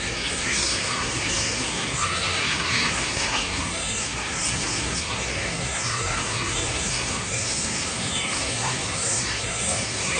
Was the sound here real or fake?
fake